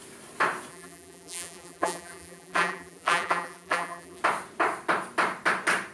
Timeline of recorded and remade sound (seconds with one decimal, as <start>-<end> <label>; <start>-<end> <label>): 0.0-0.7 recorded; 0.7-4.2 remade; 4.2-5.9 recorded